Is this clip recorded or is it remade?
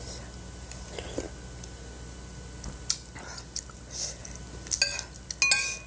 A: recorded